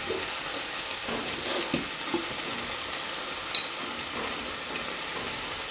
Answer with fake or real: real